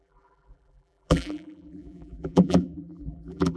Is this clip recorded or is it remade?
remade